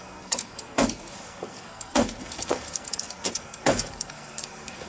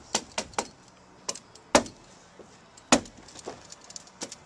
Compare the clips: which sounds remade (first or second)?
first